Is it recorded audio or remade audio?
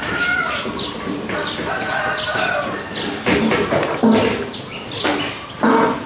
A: recorded